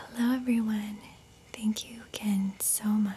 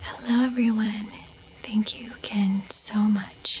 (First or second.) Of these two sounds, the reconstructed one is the second